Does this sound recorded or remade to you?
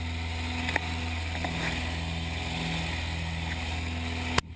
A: recorded